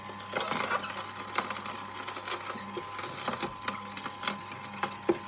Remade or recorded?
recorded